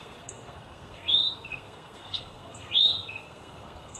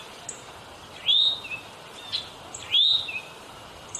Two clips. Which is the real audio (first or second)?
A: second